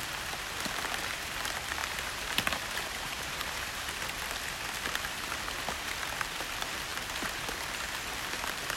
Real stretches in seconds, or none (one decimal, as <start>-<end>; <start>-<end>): 0.0-1.8; 3.8-8.8